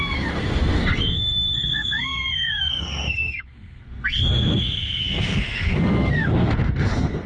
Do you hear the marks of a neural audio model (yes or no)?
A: yes